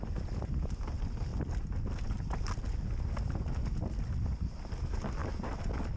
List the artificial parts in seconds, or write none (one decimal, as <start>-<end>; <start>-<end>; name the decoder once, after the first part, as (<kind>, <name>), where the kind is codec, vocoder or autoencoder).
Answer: none